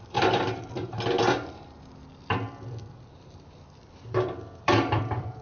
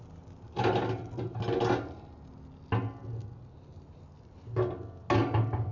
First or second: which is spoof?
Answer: first